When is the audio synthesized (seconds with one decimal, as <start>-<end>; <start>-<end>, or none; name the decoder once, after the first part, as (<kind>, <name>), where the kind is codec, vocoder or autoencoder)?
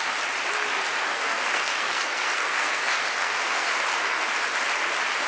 1.1-4.3 (codec, SNAC)